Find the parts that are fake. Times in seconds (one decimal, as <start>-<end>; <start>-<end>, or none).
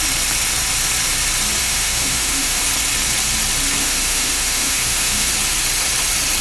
1.6-2.6; 3.8-5.3